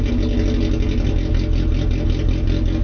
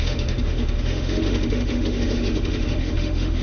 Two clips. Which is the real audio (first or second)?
first